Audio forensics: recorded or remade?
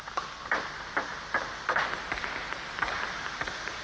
recorded